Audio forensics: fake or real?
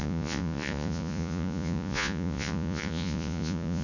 fake